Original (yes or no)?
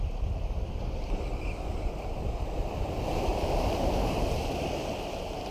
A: no